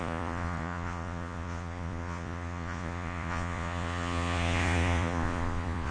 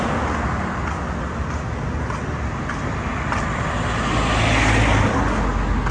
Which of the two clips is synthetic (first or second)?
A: first